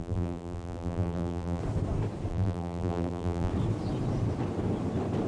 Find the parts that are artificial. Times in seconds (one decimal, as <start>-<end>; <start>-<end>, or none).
0.0-1.6; 2.3-3.5